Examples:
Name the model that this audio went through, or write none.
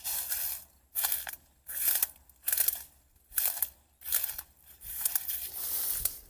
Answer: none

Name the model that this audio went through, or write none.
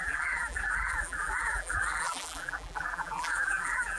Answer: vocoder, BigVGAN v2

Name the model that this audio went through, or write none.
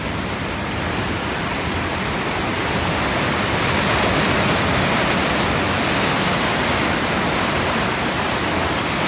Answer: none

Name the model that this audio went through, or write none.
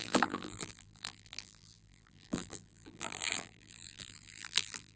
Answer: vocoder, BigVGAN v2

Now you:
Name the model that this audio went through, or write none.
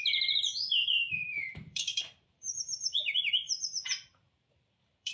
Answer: vocoder, BigVGAN v2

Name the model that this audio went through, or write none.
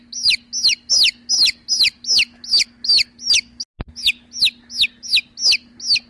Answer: none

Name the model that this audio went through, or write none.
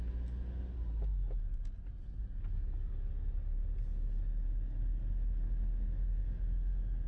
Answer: none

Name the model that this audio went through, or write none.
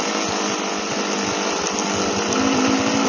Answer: none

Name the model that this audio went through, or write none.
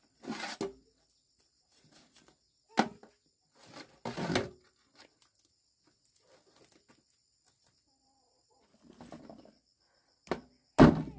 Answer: none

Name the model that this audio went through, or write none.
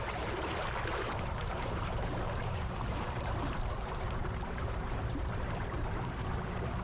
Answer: vocoder, BigVGAN v2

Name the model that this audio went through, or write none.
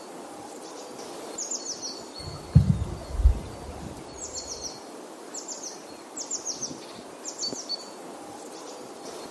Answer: none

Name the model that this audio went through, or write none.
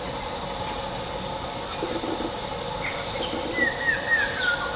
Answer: none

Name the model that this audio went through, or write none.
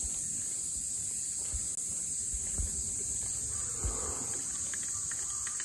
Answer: none